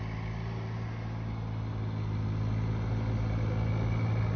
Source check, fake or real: real